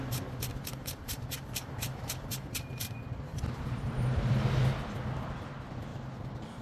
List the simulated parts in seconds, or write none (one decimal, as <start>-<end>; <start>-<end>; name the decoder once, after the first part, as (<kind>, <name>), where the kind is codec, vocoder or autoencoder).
0.5-4.4 (vocoder, BigVGAN v2); 5.9-6.6